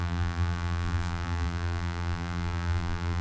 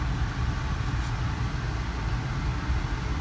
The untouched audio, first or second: second